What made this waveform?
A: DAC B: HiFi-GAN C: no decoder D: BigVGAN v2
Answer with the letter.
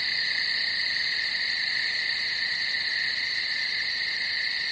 C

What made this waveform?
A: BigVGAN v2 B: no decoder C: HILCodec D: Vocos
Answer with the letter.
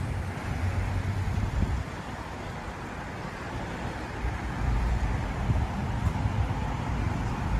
A